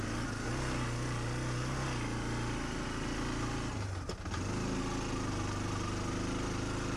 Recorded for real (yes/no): yes